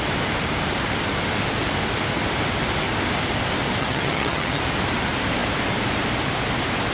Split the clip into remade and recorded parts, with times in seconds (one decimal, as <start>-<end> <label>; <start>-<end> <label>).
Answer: 0.0-3.8 recorded; 3.8-4.6 remade; 4.6-6.9 recorded